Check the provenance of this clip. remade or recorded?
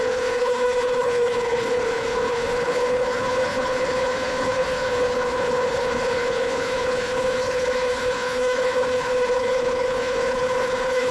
remade